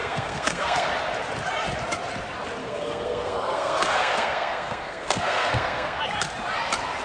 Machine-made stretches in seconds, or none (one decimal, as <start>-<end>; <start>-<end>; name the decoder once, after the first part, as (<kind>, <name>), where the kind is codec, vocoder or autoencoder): 0.0-0.9 (codec, SNAC); 2.6-6.0